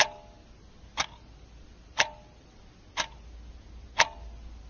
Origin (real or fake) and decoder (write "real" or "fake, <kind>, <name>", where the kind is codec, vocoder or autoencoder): real